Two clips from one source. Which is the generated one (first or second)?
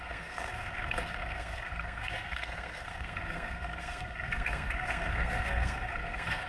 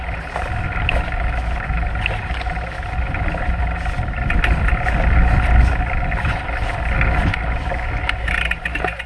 first